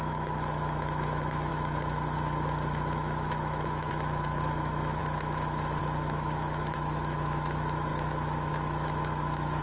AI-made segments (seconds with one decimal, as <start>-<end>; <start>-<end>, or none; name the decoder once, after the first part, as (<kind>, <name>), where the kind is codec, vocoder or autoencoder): 0.0-9.6 (autoencoder, DAC-VAE)